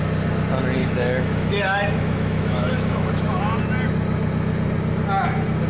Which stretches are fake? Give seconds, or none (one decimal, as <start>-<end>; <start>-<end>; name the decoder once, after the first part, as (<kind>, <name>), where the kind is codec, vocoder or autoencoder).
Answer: 0.8-3.4 (autoencoder, DAC-VAE)